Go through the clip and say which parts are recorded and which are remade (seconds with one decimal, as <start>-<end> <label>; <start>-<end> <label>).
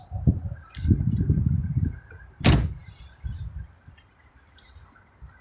0.0-2.8 recorded; 2.8-5.4 remade